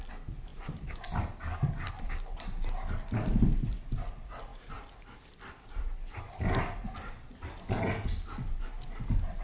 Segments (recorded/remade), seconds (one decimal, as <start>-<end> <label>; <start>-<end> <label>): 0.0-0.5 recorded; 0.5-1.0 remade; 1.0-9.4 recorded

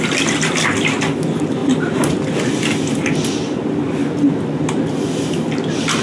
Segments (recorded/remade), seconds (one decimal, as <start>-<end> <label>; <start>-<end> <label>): 0.0-6.0 recorded

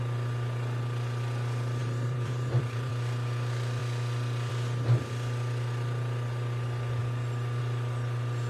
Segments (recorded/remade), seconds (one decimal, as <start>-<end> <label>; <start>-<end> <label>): 0.0-1.8 recorded; 1.8-2.9 remade; 2.9-8.5 recorded

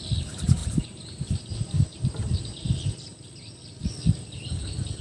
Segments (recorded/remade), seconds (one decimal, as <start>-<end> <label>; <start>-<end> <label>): 0.0-0.6 recorded; 0.6-2.4 remade; 2.4-3.8 recorded; 3.8-4.6 remade; 4.6-5.0 recorded

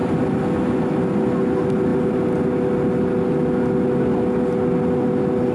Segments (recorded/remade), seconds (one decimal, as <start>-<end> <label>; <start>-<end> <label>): 0.0-5.5 recorded

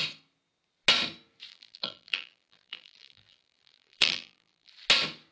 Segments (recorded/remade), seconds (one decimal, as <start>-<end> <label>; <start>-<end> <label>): 0.0-1.5 recorded; 1.5-4.7 remade; 4.7-5.3 recorded